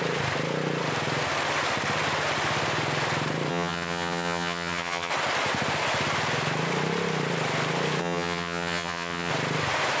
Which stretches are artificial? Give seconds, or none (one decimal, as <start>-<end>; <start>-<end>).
3.5-5.1; 8.0-9.3

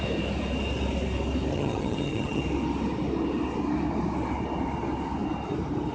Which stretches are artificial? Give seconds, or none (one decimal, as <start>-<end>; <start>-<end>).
1.5-2.4

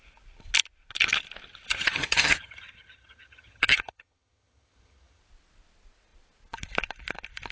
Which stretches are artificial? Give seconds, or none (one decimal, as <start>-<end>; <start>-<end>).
1.7-5.2

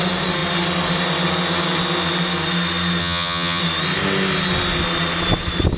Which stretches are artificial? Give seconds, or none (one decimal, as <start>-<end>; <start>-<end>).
3.0-3.6

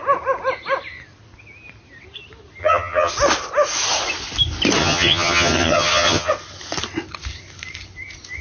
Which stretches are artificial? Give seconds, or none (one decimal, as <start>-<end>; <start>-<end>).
2.6-3.1; 4.8-6.3

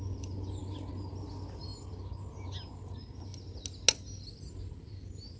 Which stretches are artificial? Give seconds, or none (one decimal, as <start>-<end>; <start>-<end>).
none

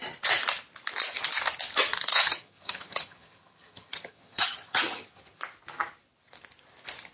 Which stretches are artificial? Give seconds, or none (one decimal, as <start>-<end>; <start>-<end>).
2.1-5.4